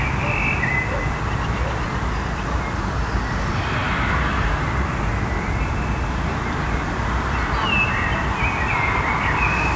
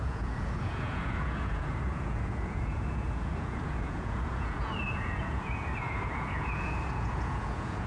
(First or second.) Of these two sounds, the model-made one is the second